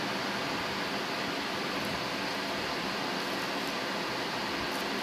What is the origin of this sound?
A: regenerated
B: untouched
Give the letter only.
B